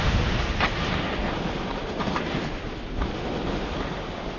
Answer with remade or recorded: recorded